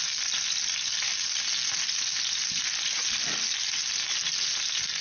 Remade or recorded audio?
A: recorded